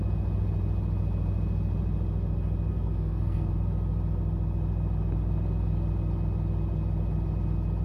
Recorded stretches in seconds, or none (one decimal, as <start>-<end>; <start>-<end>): 0.0-2.7; 3.5-7.8

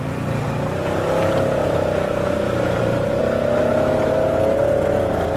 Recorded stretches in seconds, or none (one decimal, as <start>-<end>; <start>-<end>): 0.0-1.6; 3.2-5.4

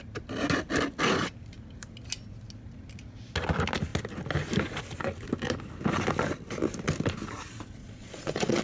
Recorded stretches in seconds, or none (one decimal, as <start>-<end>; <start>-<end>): 0.0-7.8

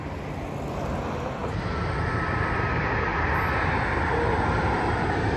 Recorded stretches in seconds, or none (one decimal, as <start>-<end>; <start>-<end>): 0.0-5.4

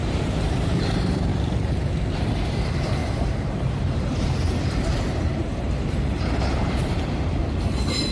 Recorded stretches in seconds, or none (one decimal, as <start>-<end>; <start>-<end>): 0.8-1.3; 1.9-3.0; 7.4-8.1